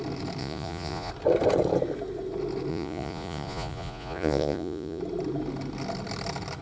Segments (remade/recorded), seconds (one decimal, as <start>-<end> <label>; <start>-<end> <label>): 0.0-0.4 recorded; 0.4-1.1 remade; 1.1-2.7 recorded; 2.7-5.0 remade; 5.0-6.6 recorded